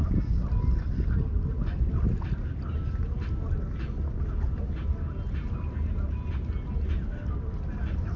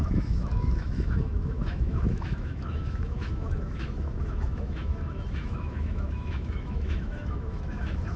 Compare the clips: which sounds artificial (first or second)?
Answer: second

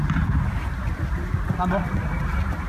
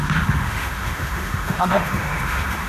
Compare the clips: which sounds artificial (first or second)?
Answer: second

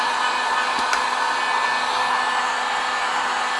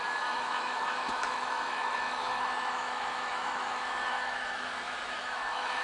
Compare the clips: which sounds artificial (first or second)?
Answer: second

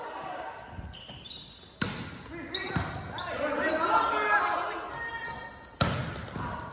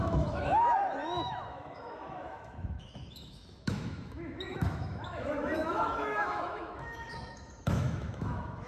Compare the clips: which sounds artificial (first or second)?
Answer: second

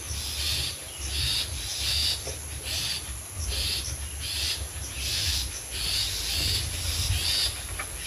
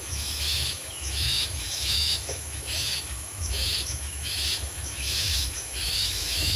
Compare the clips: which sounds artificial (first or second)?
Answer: second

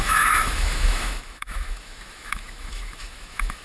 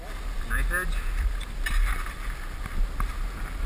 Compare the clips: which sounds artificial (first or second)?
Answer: first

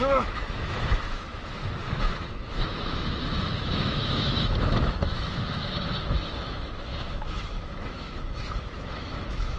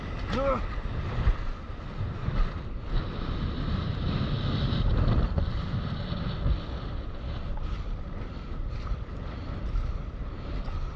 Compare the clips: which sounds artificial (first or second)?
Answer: first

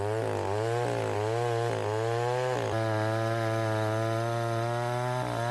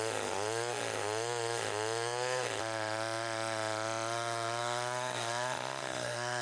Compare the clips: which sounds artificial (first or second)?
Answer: second